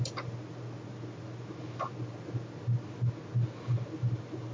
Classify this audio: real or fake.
real